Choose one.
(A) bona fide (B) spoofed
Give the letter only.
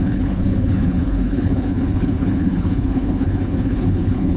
B